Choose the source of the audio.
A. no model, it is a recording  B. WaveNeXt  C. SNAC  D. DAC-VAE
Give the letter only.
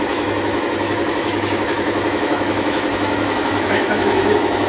D